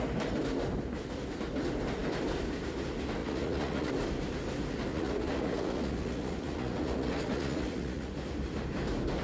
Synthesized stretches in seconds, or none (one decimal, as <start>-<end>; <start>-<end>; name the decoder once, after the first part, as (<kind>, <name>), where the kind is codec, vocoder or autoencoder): 3.2-3.9 (vocoder, Vocos); 4.9-8.1